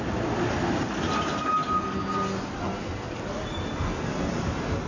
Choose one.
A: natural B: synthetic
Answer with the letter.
A